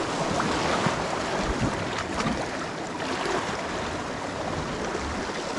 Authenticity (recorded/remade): recorded